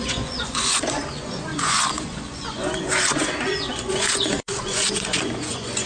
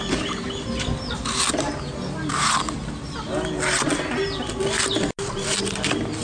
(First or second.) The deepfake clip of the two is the first